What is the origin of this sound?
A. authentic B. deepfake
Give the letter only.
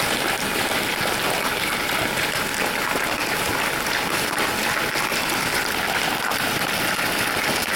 A